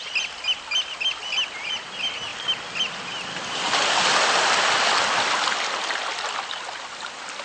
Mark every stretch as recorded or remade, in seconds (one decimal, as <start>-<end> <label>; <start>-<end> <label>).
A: 0.0-7.4 recorded